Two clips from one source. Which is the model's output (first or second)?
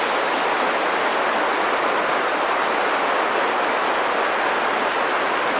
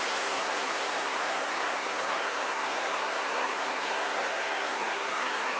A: second